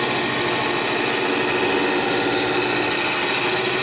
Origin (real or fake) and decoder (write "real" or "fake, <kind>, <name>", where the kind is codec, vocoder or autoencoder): real